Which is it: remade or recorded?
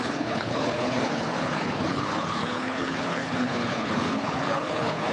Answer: remade